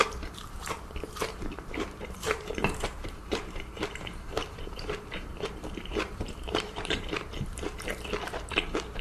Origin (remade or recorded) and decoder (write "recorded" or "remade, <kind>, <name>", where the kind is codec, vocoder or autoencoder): remade, vocoder, BigVGAN v2